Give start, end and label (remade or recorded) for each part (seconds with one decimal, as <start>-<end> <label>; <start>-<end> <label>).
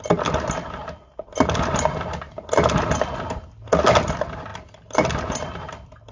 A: 0.0-4.5 recorded; 4.5-6.1 remade